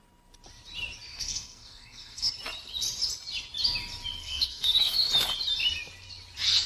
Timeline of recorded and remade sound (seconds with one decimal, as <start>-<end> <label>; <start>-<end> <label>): 0.0-1.1 recorded; 1.1-2.3 remade; 2.3-4.2 recorded; 4.2-5.1 remade; 5.1-6.7 recorded

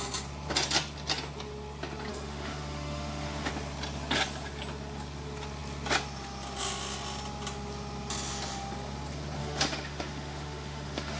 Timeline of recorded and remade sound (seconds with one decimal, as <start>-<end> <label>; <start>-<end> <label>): 0.0-2.1 recorded; 2.1-3.5 remade; 3.5-9.4 recorded; 9.4-11.2 remade

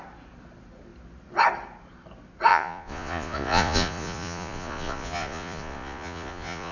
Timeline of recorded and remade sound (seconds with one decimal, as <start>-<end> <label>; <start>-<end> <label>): 0.0-2.5 recorded; 2.5-6.7 remade

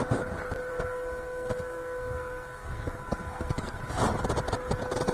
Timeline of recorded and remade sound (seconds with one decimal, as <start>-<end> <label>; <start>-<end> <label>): 0.0-0.7 recorded; 0.7-3.8 remade; 3.8-5.1 recorded